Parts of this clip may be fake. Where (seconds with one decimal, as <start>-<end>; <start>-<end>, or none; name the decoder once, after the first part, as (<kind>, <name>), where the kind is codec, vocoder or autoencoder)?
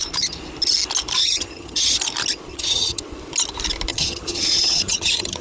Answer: 1.2-2.0 (vocoder, HiFi-GAN); 2.5-3.0; 3.9-5.4